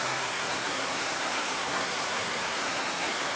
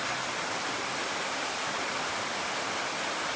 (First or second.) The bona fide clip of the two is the second